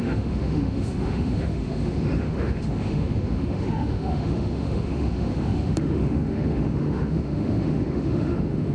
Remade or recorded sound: remade